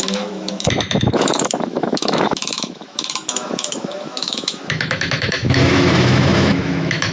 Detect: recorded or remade remade